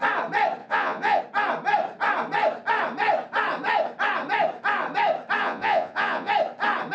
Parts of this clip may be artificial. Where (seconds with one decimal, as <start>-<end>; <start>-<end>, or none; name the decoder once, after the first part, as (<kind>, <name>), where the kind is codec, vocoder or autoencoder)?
0.6-1.2 (vocoder, Vocos); 5.4-6.3